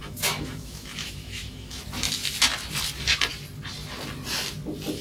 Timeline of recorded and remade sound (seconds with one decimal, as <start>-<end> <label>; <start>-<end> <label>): 0.0-1.8 remade; 1.8-5.0 recorded